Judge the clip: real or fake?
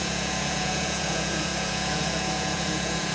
fake